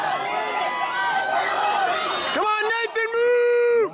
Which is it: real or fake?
real